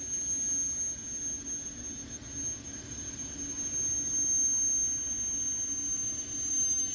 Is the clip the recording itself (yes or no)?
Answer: yes